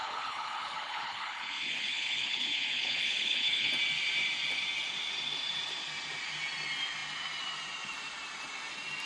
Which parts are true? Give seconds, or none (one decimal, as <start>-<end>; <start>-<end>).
3.7-9.1